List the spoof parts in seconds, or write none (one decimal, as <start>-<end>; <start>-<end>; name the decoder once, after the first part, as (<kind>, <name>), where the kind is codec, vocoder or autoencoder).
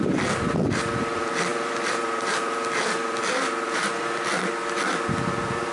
0.0-5.7 (vocoder, BigVGAN v2)